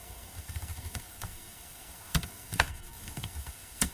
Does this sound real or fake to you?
fake